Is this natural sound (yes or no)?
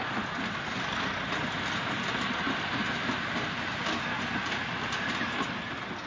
yes